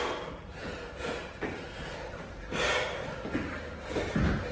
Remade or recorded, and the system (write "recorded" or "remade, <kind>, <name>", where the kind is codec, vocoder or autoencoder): recorded